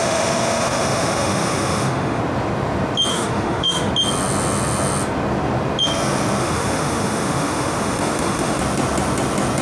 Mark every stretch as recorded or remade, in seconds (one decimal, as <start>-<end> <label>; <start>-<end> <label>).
0.0-2.2 remade; 2.2-3.1 recorded; 3.1-3.9 remade; 3.9-6.4 recorded; 6.4-8.6 remade; 8.6-9.6 recorded